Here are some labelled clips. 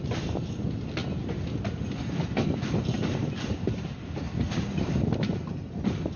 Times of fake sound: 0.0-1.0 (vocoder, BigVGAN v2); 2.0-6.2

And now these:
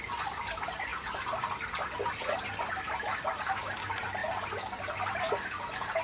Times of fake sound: 4.2-5.2 (vocoder, BigVGAN v2)

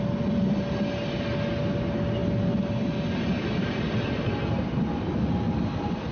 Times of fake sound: none